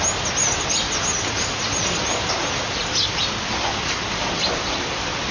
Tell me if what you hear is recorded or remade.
recorded